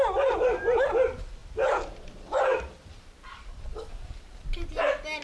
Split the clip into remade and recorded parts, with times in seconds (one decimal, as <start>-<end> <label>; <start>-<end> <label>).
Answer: 0.0-5.2 recorded